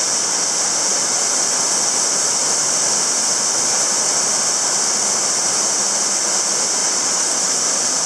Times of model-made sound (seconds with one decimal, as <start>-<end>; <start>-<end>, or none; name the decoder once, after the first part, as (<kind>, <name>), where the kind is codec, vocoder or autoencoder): 6.8-7.6 (vocoder, Vocos)